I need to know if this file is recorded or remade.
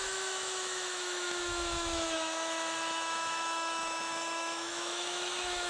remade